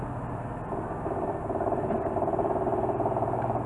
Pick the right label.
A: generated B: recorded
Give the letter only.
B